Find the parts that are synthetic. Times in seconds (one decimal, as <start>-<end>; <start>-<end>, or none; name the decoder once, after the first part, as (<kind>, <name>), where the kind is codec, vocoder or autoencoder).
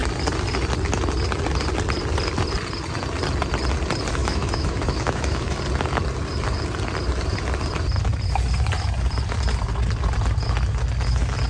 4.2-5.6 (autoencoder, DAC-VAE)